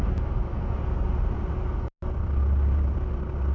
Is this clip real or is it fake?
real